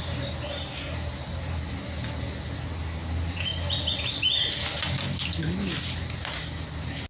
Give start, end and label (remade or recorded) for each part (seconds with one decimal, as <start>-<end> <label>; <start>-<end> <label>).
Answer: 0.0-7.1 recorded